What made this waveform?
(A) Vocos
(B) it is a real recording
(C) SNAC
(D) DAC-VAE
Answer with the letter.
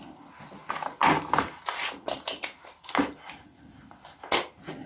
B